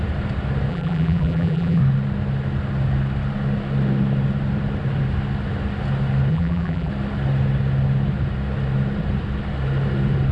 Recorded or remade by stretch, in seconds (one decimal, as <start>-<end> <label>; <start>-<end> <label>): 0.0-0.7 recorded; 0.7-1.8 remade; 1.8-6.3 recorded; 6.3-6.9 remade; 6.9-10.3 recorded